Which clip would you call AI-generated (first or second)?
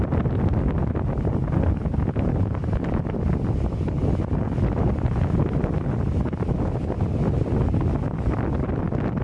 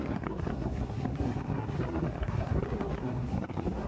second